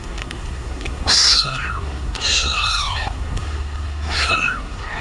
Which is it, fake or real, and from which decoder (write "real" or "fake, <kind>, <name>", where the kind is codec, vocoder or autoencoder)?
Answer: fake, codec, SNAC